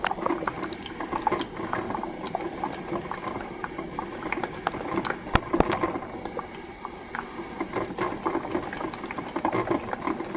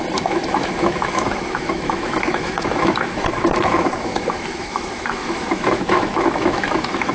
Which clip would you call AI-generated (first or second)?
second